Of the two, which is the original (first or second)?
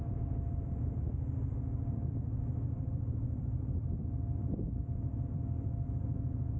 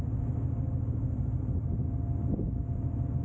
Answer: second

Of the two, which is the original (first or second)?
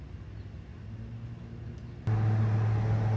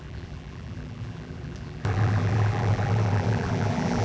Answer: first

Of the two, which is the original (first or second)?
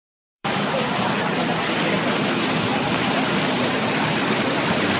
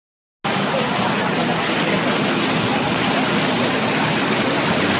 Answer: second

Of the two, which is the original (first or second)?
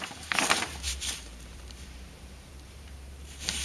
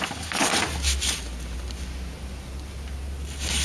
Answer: second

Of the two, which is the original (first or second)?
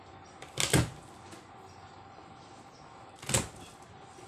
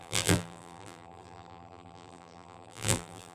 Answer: first